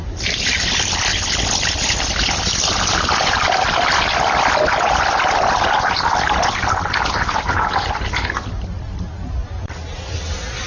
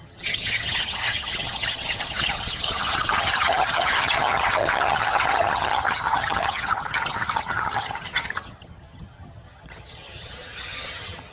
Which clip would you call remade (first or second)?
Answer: second